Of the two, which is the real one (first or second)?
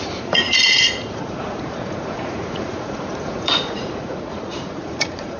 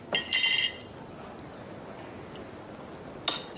second